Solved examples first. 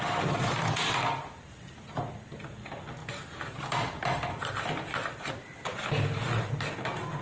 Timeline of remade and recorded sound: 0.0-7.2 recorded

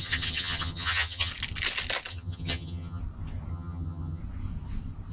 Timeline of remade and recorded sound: 0.0-1.3 remade; 1.3-2.1 recorded; 2.1-3.0 remade; 3.0-3.5 recorded; 3.5-4.2 remade; 4.2-5.1 recorded